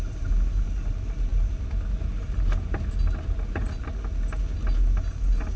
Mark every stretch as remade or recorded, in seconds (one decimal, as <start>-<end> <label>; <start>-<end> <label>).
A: 0.0-5.6 recorded